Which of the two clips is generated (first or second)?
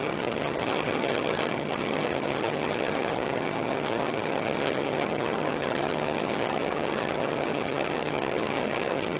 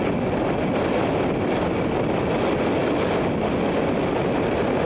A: first